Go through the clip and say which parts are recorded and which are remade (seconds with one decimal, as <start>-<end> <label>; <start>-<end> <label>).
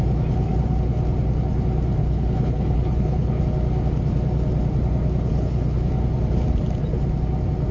0.0-2.0 recorded; 2.0-3.4 remade; 3.4-5.3 recorded; 5.3-5.9 remade; 5.9-7.7 recorded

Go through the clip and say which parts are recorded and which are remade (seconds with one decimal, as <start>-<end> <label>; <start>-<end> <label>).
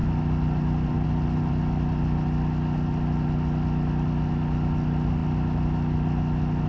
0.0-6.7 recorded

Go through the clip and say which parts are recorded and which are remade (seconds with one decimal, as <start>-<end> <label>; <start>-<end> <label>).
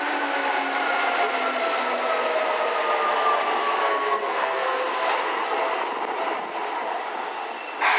0.0-3.8 recorded; 3.8-4.8 remade; 4.8-8.0 recorded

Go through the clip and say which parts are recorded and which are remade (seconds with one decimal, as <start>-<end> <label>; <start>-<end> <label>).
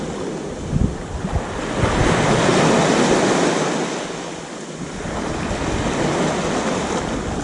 0.0-7.4 recorded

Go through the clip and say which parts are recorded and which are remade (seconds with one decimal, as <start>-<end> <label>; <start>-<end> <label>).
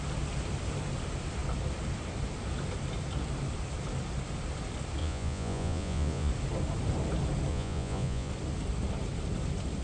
0.0-5.0 recorded; 5.0-6.3 remade; 6.3-7.5 recorded; 7.5-8.3 remade; 8.3-9.8 recorded